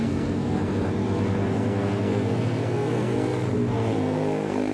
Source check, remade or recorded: remade